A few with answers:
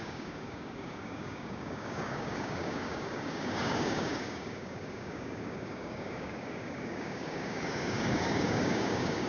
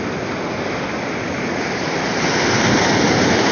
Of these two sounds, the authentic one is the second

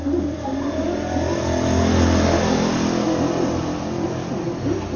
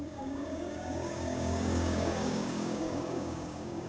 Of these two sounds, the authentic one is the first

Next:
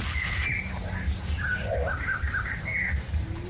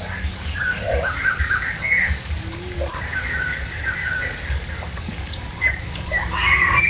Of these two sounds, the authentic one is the first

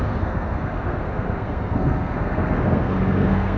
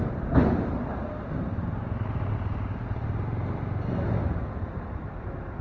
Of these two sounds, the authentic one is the second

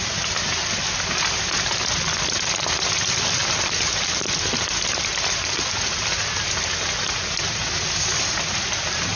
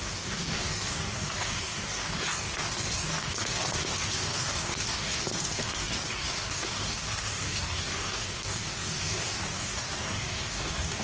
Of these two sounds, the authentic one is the first